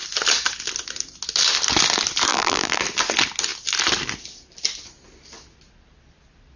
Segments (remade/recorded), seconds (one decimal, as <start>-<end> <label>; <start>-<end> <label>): 0.0-2.3 recorded; 2.3-2.8 remade; 2.8-6.6 recorded